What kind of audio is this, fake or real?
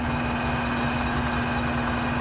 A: real